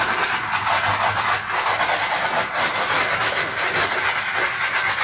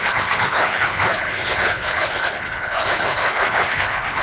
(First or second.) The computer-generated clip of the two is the second